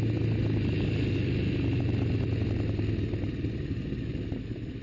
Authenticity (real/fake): real